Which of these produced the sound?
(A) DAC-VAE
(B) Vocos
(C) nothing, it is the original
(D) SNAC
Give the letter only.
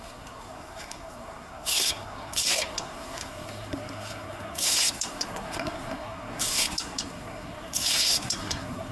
D